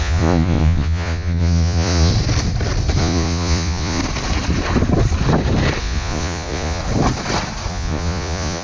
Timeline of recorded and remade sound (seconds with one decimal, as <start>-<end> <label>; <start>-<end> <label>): 0.0-2.1 remade; 2.1-3.0 recorded; 3.0-4.0 remade; 4.0-5.8 recorded; 5.8-6.8 remade; 6.8-7.7 recorded; 7.7-8.6 remade